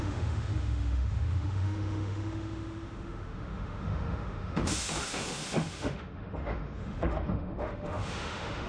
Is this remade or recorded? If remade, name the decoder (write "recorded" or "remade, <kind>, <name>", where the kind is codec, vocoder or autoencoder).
remade, autoencoder, DAC-VAE